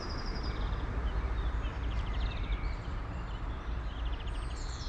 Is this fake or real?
fake